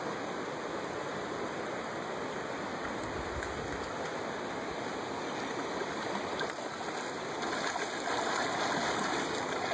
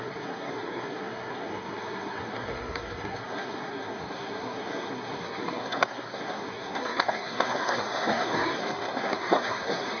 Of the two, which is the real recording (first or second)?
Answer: first